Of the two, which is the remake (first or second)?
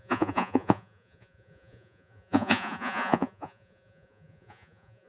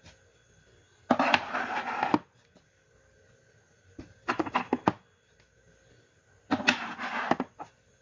first